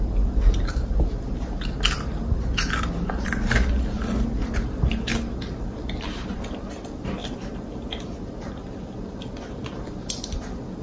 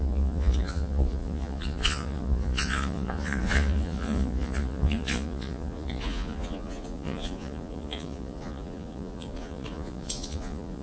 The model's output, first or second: second